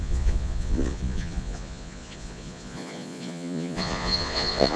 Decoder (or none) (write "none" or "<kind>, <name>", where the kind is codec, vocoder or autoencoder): vocoder, Vocos